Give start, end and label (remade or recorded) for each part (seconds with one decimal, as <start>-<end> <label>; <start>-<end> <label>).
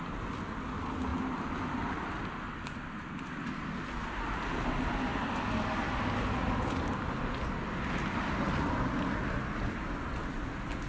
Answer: 0.0-10.9 recorded